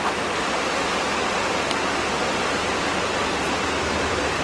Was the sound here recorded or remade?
recorded